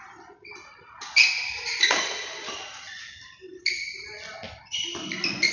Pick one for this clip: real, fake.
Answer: real